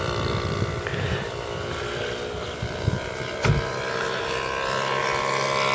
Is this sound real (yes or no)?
yes